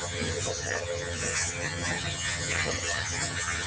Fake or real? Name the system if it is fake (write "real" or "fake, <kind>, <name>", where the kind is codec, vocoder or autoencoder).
fake, vocoder, HiFi-GAN